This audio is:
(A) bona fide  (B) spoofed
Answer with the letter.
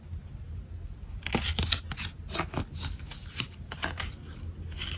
A